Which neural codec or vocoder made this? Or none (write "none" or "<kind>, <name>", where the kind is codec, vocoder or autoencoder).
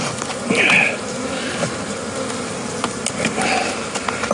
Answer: none